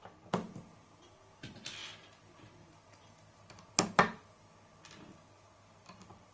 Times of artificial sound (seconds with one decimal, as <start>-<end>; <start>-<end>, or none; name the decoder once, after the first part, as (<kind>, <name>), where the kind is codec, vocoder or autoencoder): none